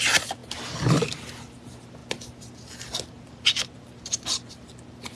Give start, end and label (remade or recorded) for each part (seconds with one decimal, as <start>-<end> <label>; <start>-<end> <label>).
0.0-5.2 recorded